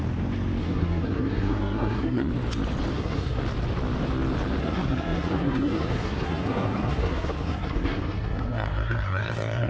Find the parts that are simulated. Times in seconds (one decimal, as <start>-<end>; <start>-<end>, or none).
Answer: 0.6-2.3; 2.9-3.4; 4.6-9.7

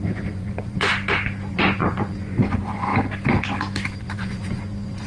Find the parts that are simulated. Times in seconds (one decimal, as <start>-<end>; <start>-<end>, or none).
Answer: 0.0-0.9; 1.5-2.9; 4.0-5.1

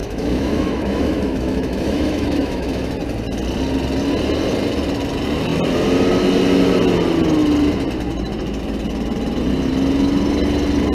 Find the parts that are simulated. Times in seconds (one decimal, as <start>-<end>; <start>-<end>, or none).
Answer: 0.0-2.9

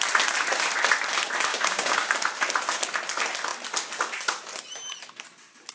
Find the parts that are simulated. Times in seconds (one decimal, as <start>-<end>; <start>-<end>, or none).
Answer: 1.5-2.1